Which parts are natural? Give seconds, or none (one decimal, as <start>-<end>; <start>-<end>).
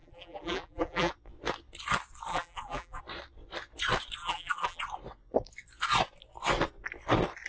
1.1-2.3; 3.0-4.2; 4.8-7.5